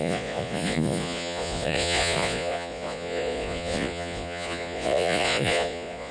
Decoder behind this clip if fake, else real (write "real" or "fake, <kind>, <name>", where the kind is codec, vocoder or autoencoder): fake, vocoder, Vocos